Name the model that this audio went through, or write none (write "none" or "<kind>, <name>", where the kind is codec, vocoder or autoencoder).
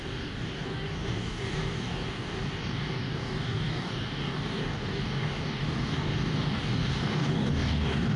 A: codec, DAC